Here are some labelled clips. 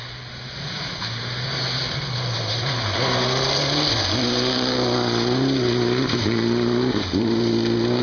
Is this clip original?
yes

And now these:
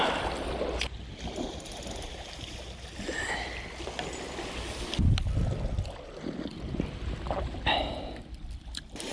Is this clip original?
yes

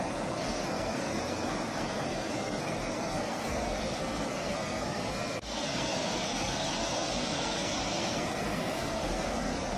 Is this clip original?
no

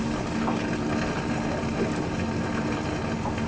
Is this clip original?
yes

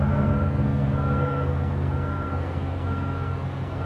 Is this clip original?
no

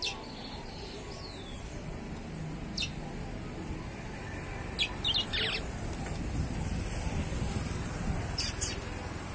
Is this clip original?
yes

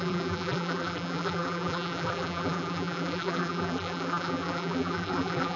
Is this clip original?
no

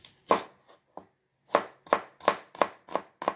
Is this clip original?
yes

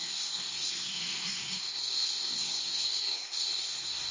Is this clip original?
no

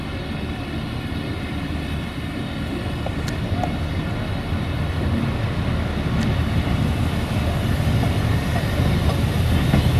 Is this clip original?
yes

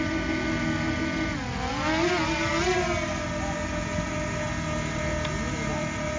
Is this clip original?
yes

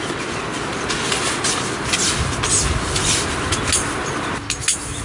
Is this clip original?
yes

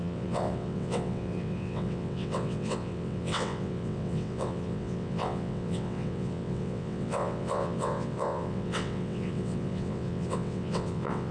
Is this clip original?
no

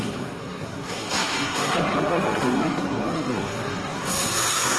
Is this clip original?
no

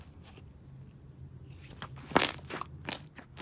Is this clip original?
yes